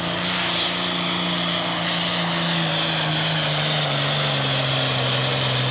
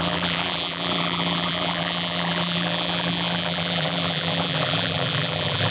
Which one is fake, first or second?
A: second